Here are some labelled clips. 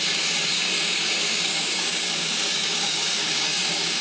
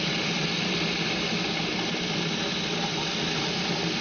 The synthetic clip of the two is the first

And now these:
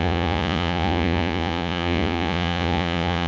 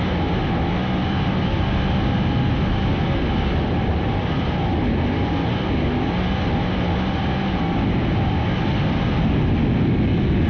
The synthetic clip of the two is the first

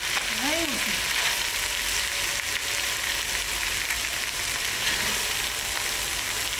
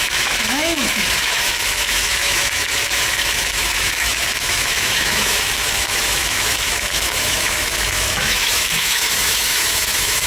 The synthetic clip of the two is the second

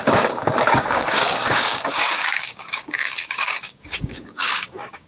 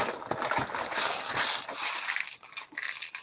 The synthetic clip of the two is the first